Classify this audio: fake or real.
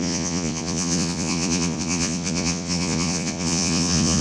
fake